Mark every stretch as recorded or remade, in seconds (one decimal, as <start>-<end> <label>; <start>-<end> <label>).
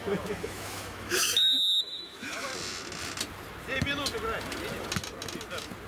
0.0-2.5 remade; 2.5-5.9 recorded